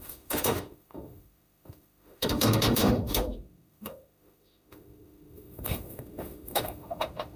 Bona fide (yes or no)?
no